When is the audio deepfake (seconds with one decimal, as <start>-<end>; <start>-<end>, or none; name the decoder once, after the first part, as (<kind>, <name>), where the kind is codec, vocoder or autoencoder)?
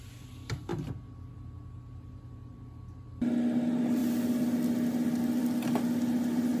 none